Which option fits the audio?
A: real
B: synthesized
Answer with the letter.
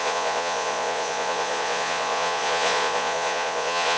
B